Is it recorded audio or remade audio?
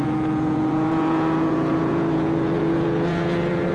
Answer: remade